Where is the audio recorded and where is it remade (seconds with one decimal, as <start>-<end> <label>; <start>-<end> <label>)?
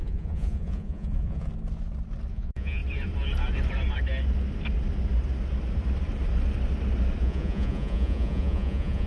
0.0-1.5 remade; 1.5-2.3 recorded; 2.3-2.8 remade; 2.8-7.2 recorded; 7.2-9.1 remade